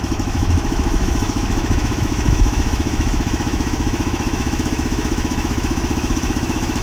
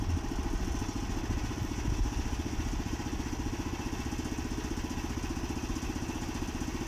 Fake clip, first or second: first